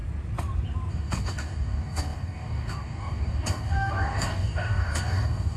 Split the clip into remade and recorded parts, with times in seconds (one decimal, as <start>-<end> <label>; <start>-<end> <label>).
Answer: 0.0-0.9 recorded; 0.9-5.6 remade